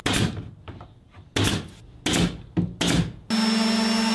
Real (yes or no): yes